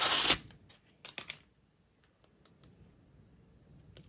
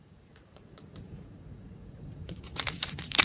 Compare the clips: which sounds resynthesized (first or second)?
second